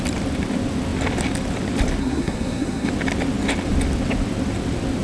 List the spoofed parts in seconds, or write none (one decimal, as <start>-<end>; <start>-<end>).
2.0-2.9